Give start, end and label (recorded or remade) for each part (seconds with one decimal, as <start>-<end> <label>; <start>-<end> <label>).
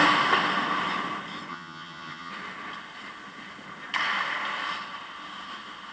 0.0-1.5 recorded; 1.5-2.3 remade; 2.3-5.9 recorded